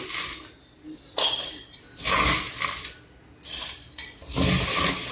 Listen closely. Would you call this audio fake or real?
real